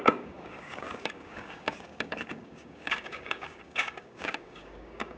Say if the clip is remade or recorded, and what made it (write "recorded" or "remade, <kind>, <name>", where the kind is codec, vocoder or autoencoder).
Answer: remade, codec, DAC